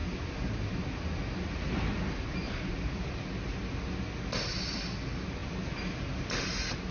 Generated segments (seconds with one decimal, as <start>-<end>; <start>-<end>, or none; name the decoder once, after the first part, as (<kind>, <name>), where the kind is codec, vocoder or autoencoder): none